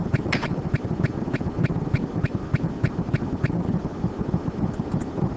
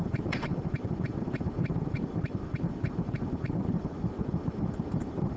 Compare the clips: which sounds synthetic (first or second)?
second